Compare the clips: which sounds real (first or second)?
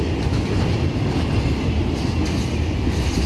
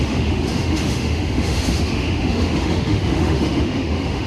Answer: first